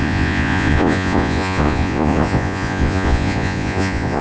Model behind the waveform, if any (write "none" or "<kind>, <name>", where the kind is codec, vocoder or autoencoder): vocoder, Vocos